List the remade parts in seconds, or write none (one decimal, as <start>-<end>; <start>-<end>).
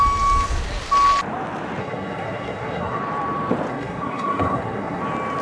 1.8-3.0; 3.7-5.0